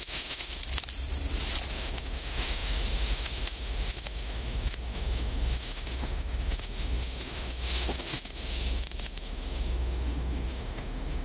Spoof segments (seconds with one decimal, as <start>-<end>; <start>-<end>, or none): 0.0-0.6; 1.7-11.2